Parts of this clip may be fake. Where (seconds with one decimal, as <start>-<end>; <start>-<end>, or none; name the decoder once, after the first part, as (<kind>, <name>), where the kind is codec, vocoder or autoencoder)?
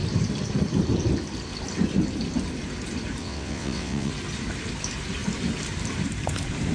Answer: 3.2-4.1 (vocoder, WaveNeXt)